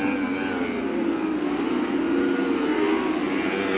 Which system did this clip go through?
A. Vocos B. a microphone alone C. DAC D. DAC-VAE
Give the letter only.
B